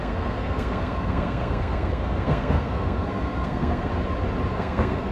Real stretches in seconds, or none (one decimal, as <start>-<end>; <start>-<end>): 3.9-4.5